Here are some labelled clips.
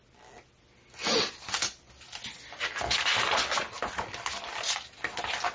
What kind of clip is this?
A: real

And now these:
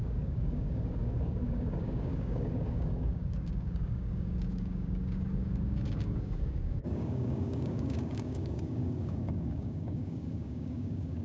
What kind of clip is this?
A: fake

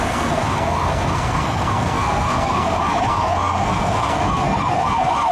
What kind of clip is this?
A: fake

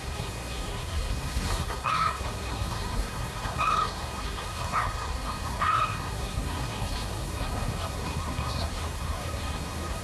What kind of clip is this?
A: fake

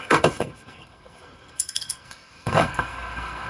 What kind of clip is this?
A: fake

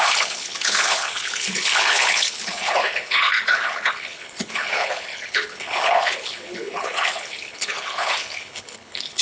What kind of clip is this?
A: fake